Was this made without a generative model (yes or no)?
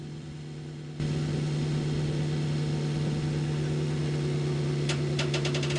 yes